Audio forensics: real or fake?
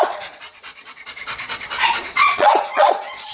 fake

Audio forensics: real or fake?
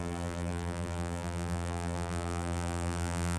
fake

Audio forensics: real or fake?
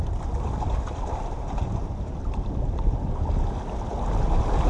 real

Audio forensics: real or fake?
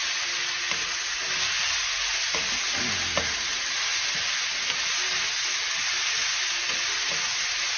real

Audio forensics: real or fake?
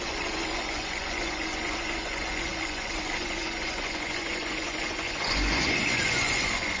fake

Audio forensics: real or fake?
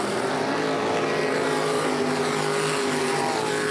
real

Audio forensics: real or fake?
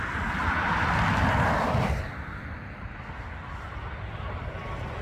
real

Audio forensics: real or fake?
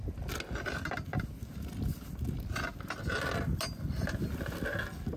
real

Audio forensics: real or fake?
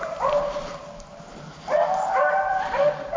real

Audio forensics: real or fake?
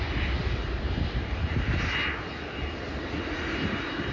real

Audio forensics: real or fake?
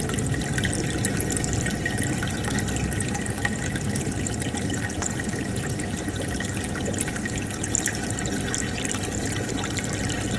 real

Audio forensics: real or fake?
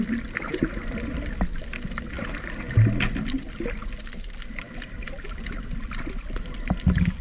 real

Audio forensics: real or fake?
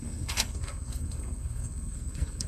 fake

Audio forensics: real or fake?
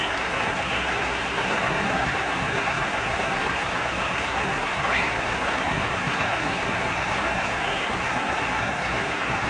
fake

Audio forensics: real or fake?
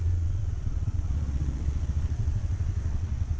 fake